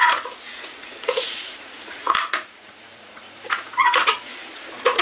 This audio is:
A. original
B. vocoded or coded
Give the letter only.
B